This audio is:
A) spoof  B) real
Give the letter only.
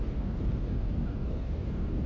A